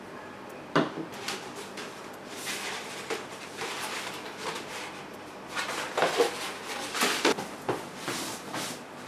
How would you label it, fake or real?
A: fake